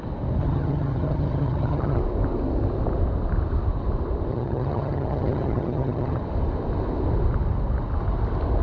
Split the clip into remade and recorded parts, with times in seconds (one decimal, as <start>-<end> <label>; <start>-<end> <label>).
0.0-0.4 recorded; 0.4-2.0 remade; 2.0-4.3 recorded; 4.3-6.2 remade; 6.2-8.6 recorded